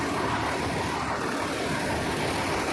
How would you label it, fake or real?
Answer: real